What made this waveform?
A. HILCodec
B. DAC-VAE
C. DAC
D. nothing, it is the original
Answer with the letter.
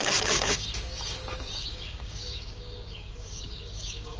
C